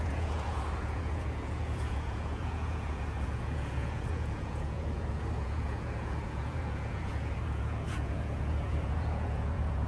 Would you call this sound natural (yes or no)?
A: no